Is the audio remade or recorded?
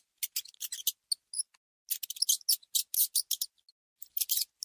recorded